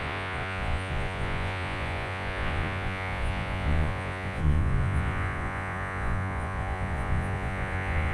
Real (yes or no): no